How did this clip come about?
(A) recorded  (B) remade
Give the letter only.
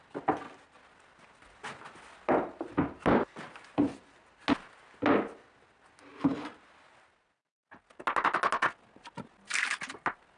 A